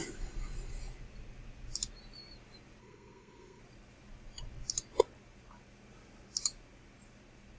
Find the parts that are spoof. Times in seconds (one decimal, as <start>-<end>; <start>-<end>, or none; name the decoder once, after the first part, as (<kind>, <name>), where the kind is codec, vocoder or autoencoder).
2.8-3.6 (codec, SNAC)